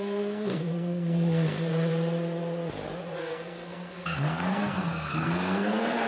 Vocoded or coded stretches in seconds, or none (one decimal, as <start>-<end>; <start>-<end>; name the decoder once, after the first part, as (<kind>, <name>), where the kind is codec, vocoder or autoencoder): 0.0-1.7 (codec, SNAC); 3.2-6.1